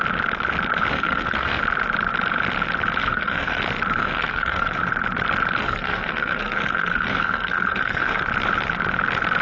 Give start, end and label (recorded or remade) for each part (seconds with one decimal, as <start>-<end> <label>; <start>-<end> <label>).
0.0-0.9 recorded; 0.9-1.6 remade; 1.6-3.0 recorded; 3.0-3.6 remade; 3.6-4.0 recorded; 4.0-4.8 remade; 4.8-5.6 recorded; 5.6-8.2 remade; 8.2-9.4 recorded